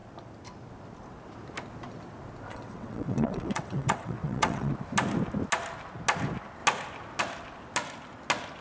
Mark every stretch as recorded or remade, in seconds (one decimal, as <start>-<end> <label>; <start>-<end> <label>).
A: 0.0-2.5 recorded; 2.5-4.7 remade; 4.7-8.6 recorded